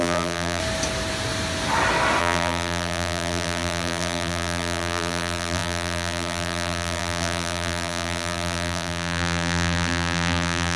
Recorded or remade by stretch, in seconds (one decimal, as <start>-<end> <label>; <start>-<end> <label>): 0.0-0.6 remade; 0.6-2.2 recorded; 2.2-10.8 remade